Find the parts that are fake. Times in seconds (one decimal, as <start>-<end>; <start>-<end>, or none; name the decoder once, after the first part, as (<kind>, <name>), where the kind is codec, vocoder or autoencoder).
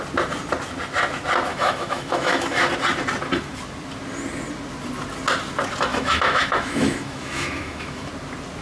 1.5-2.7 (autoencoder, DAC-VAE); 5.9-8.1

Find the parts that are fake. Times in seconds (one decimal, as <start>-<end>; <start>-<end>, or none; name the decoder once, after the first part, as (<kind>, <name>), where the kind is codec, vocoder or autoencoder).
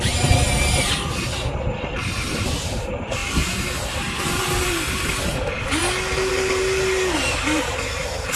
none